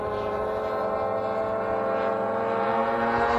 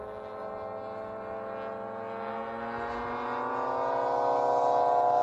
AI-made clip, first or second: first